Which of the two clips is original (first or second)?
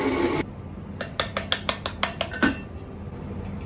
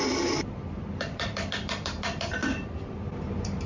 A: first